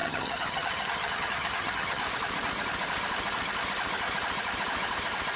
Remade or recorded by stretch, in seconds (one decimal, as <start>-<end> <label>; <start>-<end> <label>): 0.0-2.0 remade; 2.0-5.4 recorded